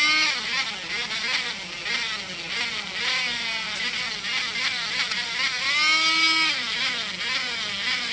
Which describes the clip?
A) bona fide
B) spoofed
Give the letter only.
A